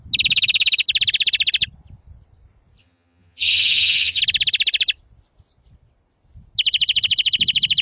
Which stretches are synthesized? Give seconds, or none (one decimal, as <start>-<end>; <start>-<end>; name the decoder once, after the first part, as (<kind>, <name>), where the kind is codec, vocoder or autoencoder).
2.8-4.2 (vocoder, HiFi-GAN)